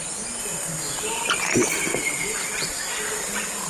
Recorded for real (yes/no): yes